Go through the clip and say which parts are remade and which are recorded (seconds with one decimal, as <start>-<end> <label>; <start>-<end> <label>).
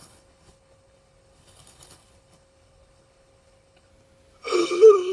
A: 0.0-3.9 remade; 3.9-4.6 recorded; 4.6-5.1 remade